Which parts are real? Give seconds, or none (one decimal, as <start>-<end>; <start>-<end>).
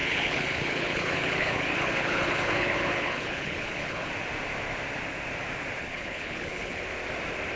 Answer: 4.1-5.8; 6.8-7.6